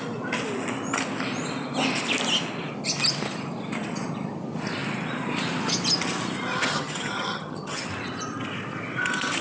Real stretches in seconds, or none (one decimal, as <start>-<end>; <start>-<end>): 0.0-6.6; 7.9-9.4